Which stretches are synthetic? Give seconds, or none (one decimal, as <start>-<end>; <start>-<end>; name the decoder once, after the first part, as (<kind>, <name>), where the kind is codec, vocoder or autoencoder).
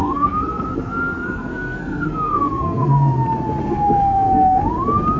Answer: 0.0-3.1 (codec, SNAC); 3.6-4.6